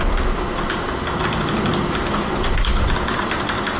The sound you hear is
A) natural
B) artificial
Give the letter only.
A